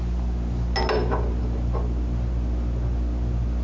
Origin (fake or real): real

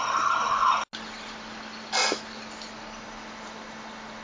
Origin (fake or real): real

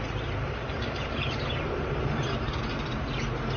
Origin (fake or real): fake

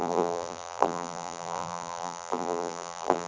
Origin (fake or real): fake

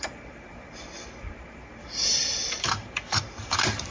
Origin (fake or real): fake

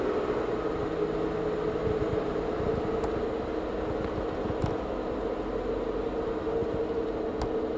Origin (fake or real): real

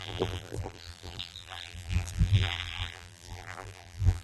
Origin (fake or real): fake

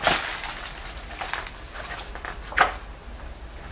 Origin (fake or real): real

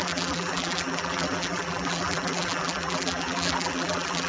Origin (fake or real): fake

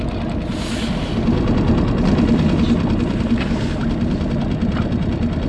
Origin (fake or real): real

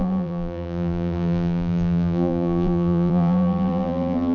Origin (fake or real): fake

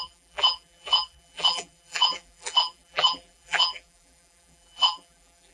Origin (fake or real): fake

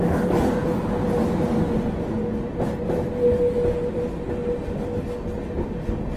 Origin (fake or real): real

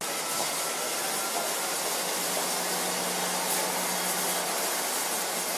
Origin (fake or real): real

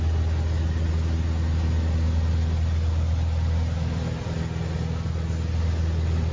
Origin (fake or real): real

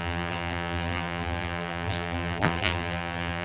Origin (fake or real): fake